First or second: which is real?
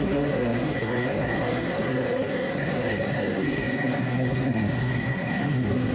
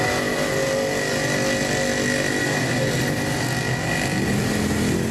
second